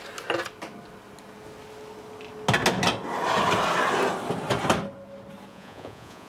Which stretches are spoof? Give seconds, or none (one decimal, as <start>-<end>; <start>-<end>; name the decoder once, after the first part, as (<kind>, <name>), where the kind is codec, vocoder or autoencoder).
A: 5.5-6.3 (vocoder, Vocos)